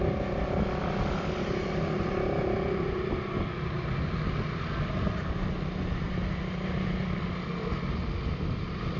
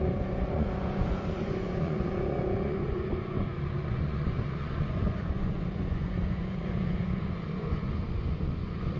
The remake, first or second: second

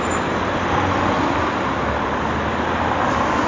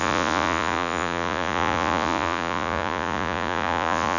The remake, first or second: second